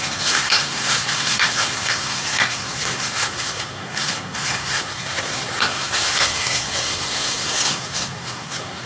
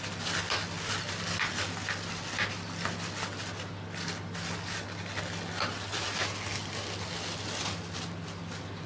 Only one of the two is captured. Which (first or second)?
second